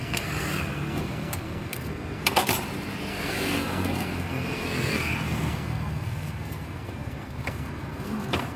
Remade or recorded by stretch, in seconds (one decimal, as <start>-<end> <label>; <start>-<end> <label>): 0.0-2.5 remade; 2.5-3.1 recorded; 3.1-8.6 remade